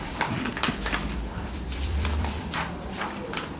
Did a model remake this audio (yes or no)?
yes